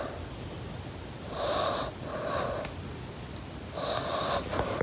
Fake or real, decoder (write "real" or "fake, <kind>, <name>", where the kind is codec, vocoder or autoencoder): real